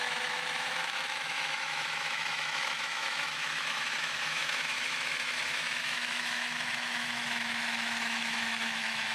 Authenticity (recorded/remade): remade